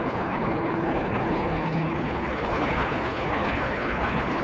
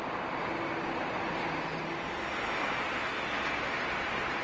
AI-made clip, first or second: first